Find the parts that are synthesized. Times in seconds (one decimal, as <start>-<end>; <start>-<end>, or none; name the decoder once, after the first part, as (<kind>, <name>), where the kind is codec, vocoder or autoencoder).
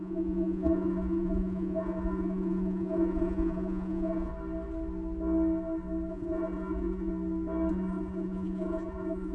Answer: 0.0-4.3 (vocoder, Vocos); 6.1-7.1; 7.7-9.3